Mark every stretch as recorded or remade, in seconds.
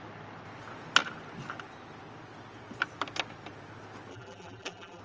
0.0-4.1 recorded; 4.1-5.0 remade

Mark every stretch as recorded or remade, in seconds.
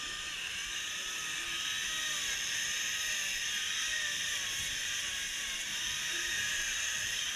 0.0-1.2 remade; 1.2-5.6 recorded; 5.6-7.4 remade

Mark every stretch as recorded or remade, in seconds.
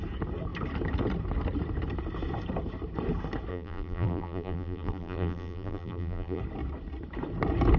0.0-3.5 recorded; 3.5-6.4 remade; 6.4-7.8 recorded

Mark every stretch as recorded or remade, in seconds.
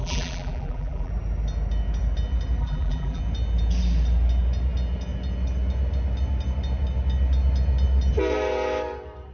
0.0-1.1 remade; 1.1-2.6 recorded; 2.6-3.2 remade; 3.2-9.3 recorded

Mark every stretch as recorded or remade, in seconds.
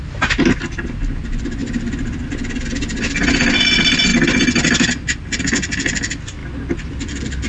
0.0-1.6 recorded; 1.6-3.6 remade; 3.6-6.4 recorded; 6.4-7.1 remade; 7.1-7.5 recorded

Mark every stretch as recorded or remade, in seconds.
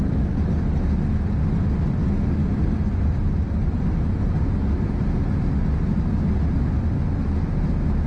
0.0-2.4 recorded; 2.4-3.9 remade; 3.9-8.1 recorded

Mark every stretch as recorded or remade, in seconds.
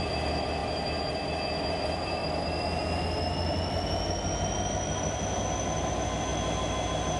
0.0-0.6 remade; 0.6-1.6 recorded; 1.6-2.2 remade; 2.2-5.8 recorded; 5.8-6.3 remade; 6.3-7.2 recorded